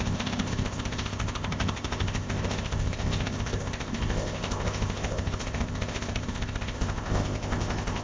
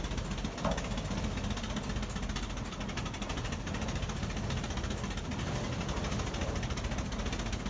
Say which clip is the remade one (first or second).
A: first